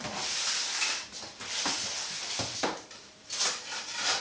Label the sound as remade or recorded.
remade